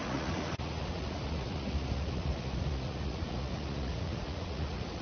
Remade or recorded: remade